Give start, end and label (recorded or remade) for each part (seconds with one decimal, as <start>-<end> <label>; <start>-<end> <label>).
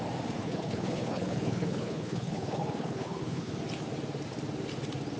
0.0-0.4 recorded; 0.4-3.5 remade; 3.5-5.2 recorded